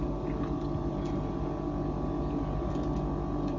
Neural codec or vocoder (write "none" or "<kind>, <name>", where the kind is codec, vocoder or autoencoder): none